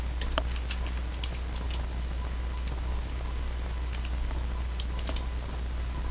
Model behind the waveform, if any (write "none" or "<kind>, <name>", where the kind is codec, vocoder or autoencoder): none